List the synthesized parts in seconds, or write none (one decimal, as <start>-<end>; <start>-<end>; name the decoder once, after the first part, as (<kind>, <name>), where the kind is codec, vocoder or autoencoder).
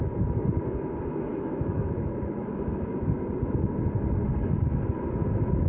1.3-2.9 (autoencoder, DAC-VAE)